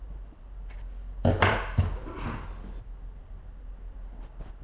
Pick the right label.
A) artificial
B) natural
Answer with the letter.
B